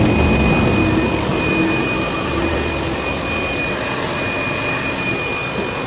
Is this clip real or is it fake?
real